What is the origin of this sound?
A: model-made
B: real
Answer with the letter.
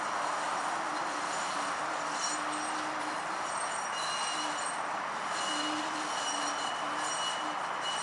B